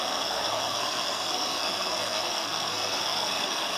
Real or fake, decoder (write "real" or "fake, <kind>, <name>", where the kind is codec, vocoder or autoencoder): fake, codec, SNAC